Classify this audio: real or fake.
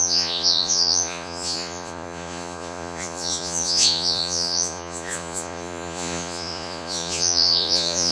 fake